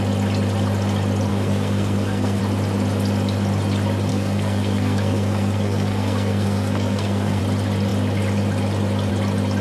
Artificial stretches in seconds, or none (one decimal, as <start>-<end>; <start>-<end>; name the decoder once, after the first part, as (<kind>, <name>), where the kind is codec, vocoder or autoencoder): 1.3-2.4 (codec, SNAC); 4.1-7.4